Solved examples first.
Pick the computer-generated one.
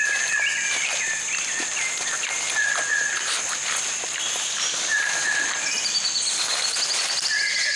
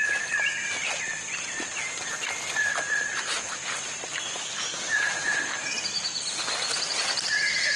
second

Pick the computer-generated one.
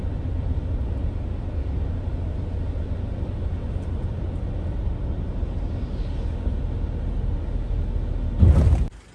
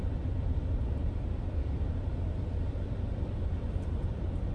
second